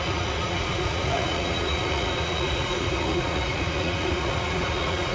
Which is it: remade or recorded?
remade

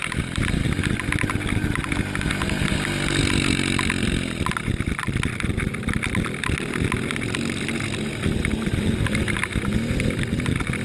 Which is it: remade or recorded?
recorded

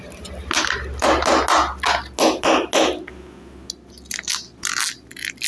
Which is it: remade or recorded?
recorded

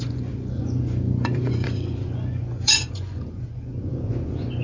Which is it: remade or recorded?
remade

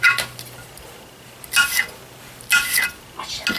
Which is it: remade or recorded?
recorded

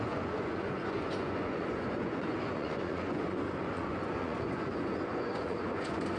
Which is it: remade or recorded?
remade